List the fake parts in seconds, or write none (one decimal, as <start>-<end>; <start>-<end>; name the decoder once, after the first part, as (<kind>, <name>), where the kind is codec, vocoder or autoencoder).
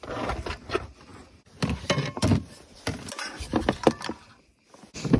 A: none